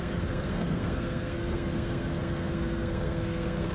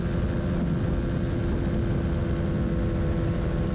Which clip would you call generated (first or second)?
first